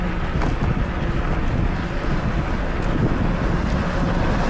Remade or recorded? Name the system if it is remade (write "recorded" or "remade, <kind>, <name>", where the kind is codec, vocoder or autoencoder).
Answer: recorded